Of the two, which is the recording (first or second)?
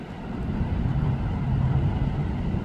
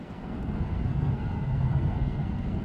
first